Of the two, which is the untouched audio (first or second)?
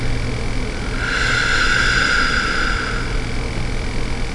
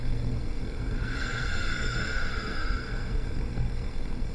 first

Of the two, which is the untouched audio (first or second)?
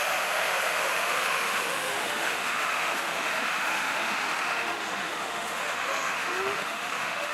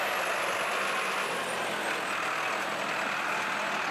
second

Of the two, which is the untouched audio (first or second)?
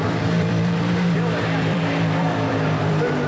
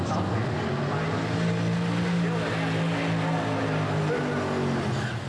second